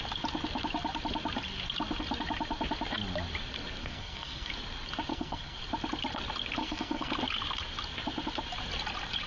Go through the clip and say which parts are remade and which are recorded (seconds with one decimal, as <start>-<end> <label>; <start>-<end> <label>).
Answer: 0.0-3.8 recorded; 3.8-4.5 remade; 4.5-5.1 recorded; 5.1-5.6 remade; 5.6-6.6 recorded; 6.6-7.1 remade; 7.1-9.3 recorded